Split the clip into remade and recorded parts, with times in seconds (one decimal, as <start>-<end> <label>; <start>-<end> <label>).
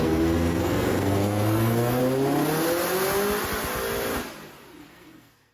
0.0-2.0 remade; 2.0-4.8 recorded; 4.8-5.5 remade